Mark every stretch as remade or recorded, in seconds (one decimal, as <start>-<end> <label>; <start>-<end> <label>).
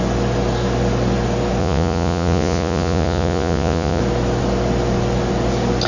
0.0-1.6 recorded; 1.6-4.0 remade; 4.0-5.9 recorded